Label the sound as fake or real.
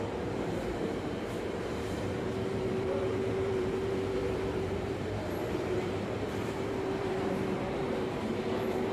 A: fake